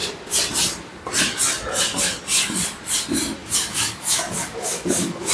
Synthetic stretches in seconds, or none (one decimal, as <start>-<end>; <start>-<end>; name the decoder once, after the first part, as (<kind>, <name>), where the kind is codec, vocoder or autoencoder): 3.4-5.3 (codec, DAC)